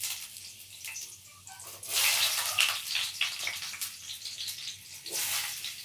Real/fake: real